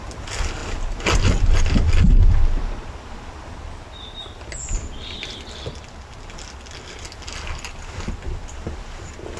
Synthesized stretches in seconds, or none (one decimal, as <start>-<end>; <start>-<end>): none